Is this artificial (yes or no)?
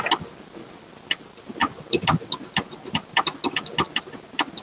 no